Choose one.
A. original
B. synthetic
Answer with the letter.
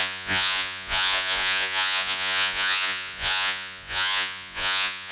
B